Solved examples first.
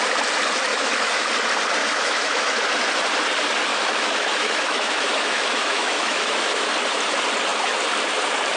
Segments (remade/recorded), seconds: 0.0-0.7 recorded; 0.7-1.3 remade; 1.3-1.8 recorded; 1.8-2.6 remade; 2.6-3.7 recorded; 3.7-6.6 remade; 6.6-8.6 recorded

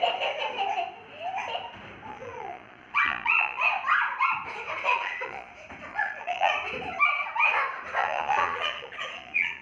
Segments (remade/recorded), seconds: 0.0-2.1 recorded; 2.1-3.6 remade; 3.6-4.9 recorded; 4.9-5.5 remade; 5.5-5.9 recorded; 5.9-6.5 remade; 6.5-8.0 recorded; 8.0-9.6 remade

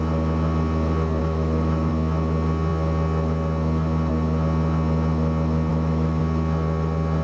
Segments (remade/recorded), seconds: 0.0-1.2 recorded; 1.2-1.9 remade; 1.9-5.7 recorded; 5.7-6.2 remade; 6.2-7.2 recorded

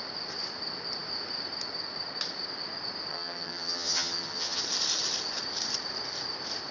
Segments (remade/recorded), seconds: 0.0-3.1 recorded; 3.1-4.6 remade; 4.6-6.7 recorded